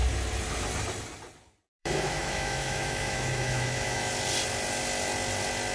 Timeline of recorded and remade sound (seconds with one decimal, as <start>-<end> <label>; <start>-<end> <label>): 0.0-1.8 recorded; 1.8-4.1 remade; 4.1-5.7 recorded